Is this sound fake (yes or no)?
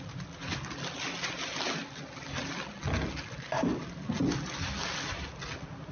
no